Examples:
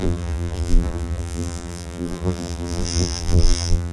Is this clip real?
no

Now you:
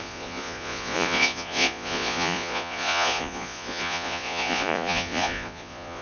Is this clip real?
no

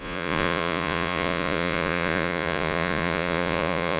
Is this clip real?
no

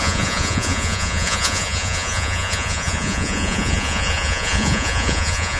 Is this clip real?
no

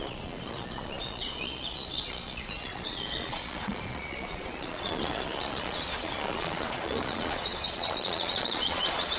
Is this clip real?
no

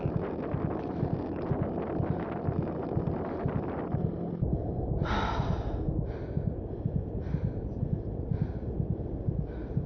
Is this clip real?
yes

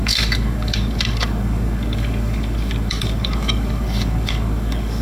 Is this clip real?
no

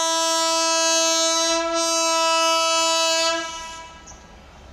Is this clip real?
yes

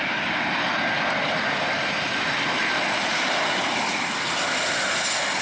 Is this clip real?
yes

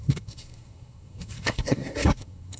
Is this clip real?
no